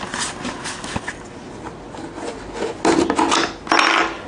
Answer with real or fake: real